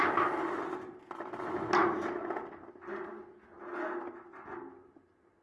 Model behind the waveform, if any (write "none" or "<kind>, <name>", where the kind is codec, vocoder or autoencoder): none